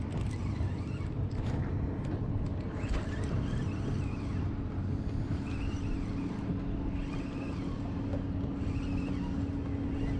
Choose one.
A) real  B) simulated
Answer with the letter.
A